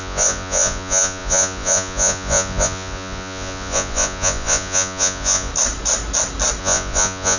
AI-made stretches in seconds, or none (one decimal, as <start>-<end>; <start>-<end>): 0.0-5.5; 6.6-7.4